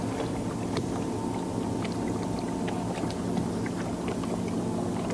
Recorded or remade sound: recorded